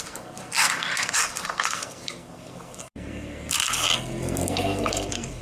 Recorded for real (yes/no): no